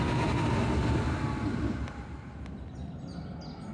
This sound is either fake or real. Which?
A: real